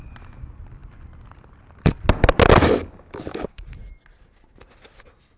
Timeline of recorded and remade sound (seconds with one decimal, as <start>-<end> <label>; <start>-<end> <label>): 0.0-5.4 recorded